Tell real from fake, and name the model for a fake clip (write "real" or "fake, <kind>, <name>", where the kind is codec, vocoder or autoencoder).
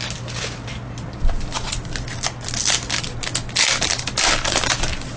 real